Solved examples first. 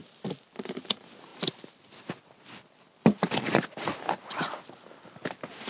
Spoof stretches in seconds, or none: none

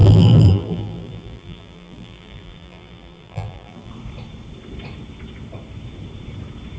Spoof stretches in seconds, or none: 0.0-3.9 (vocoder, BigVGAN v2)

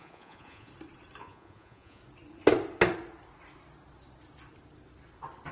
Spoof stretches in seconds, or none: 0.0-0.7 (vocoder, Vocos); 1.2-2.0

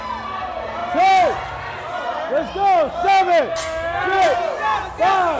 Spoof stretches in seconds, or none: none

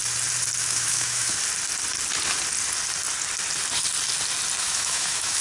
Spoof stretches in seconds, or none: 0.6-1.4 (autoencoder, DAC-VAE); 4.6-5.4

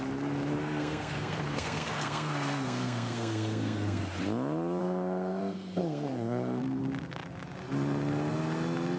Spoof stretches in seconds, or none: 0.6-4.0 (codec, SNAC); 4.8-6.8

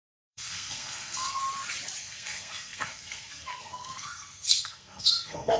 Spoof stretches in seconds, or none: 0.0-1.4 (codec, SNAC); 2.0-5.6

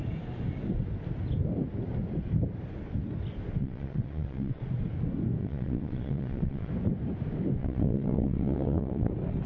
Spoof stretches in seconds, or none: 3.6-4.6 (vocoder, WaveNeXt); 5.4-6.7; 7.6-9.1